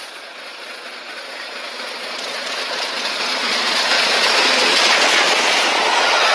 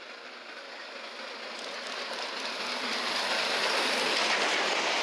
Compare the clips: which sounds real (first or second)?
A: second